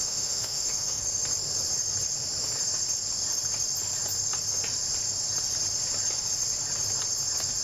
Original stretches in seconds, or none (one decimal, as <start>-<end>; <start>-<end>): 1.0-7.6